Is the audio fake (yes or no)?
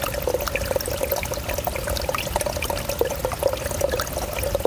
no